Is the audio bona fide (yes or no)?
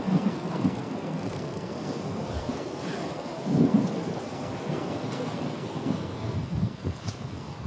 no